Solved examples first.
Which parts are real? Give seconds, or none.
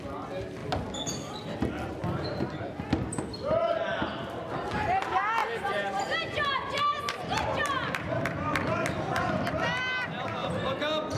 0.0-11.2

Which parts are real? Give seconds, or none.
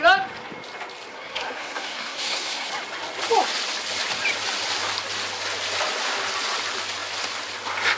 0.0-1.1; 2.7-8.0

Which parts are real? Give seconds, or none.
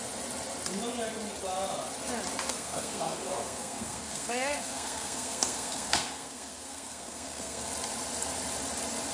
0.0-2.5; 7.7-9.1